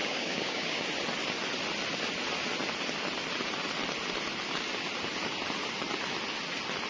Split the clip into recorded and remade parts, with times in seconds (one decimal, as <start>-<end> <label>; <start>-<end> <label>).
0.0-0.9 remade; 0.9-6.9 recorded